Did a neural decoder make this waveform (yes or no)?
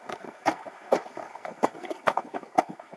yes